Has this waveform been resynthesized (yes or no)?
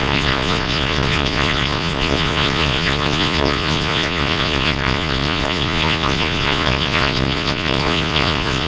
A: yes